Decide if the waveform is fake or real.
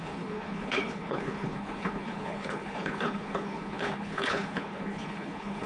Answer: fake